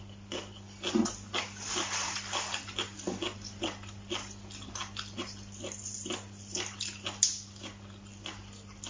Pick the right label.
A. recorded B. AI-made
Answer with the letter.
A